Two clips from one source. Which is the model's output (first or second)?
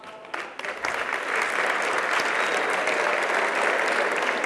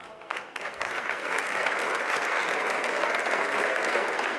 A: second